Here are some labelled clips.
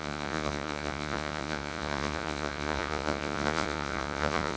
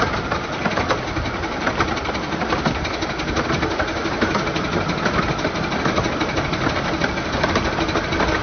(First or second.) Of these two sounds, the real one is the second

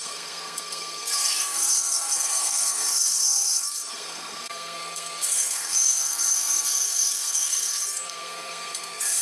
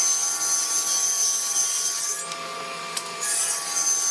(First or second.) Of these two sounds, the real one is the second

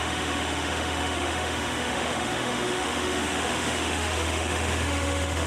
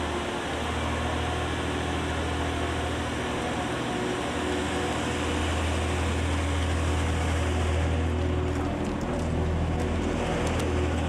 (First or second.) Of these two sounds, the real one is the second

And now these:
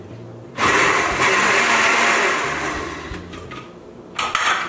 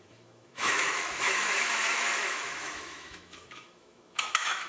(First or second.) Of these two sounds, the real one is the first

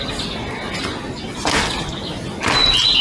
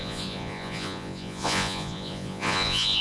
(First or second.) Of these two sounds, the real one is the first